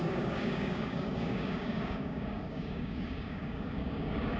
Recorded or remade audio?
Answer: remade